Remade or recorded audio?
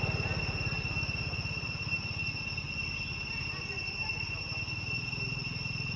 recorded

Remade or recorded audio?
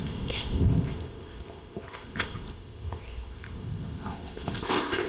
remade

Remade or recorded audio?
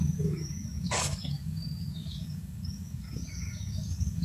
remade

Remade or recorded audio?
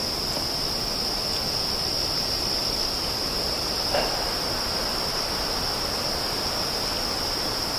recorded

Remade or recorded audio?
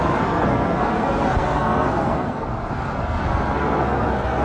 remade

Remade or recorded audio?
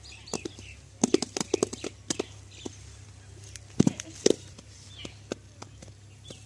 recorded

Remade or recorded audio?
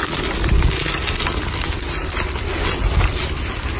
recorded